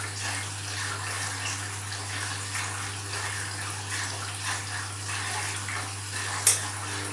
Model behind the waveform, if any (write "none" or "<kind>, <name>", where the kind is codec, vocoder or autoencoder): none